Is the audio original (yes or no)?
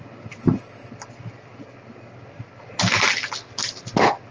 yes